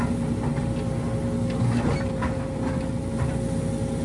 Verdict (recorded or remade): recorded